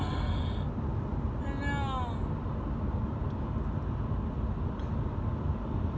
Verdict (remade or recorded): recorded